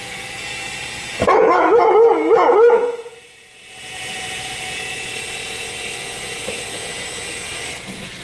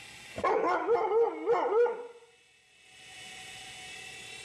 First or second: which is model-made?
first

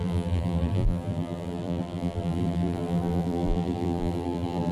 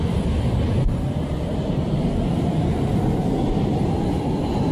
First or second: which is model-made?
first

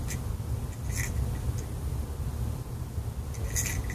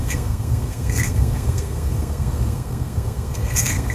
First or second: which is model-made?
second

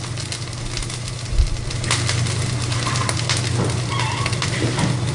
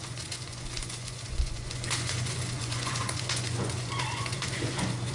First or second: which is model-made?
second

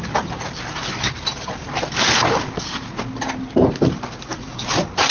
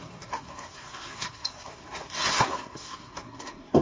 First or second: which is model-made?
second